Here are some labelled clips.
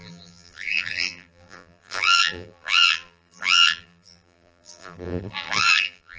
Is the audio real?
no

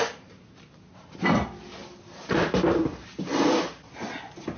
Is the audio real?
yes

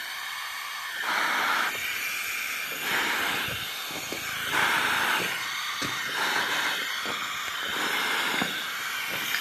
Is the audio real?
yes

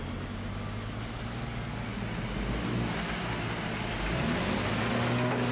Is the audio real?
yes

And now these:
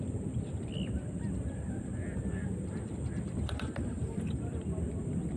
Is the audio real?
no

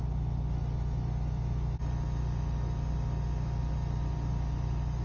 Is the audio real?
yes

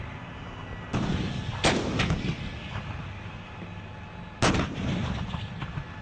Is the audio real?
yes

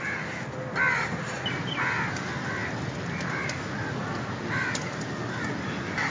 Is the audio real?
yes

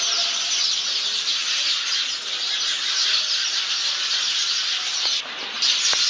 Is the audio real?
yes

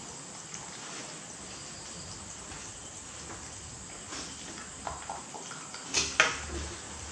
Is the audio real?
yes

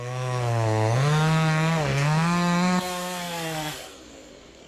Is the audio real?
no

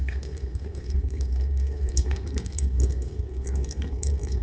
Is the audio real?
no